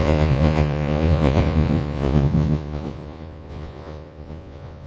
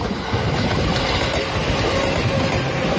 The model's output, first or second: first